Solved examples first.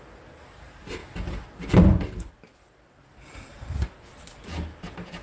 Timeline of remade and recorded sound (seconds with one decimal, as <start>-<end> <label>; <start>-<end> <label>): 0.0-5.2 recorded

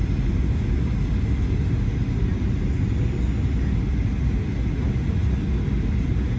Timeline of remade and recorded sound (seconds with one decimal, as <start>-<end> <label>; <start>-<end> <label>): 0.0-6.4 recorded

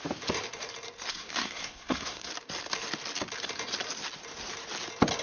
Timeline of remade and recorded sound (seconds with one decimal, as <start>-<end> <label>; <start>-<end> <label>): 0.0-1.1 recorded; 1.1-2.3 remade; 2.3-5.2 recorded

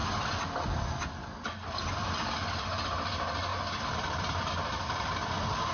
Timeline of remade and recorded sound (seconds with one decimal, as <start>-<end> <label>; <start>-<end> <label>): 0.0-5.7 recorded